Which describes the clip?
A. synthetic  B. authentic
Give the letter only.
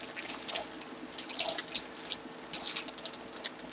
B